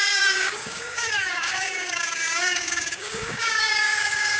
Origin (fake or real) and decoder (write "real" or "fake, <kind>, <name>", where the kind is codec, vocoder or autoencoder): fake, codec, DAC